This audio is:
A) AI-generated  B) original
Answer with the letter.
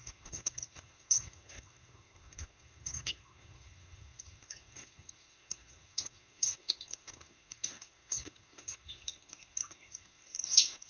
A